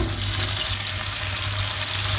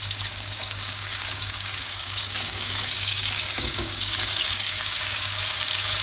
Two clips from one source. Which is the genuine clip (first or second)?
first